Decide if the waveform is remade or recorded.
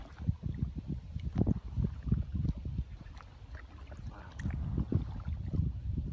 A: recorded